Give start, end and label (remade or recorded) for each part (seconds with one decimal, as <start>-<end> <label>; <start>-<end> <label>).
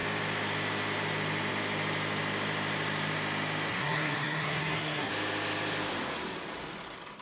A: 0.0-3.7 recorded; 3.7-5.1 remade; 5.1-7.2 recorded